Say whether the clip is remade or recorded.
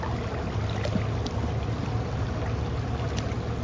recorded